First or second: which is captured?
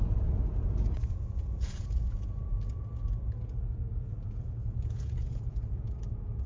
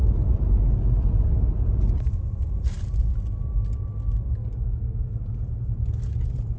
second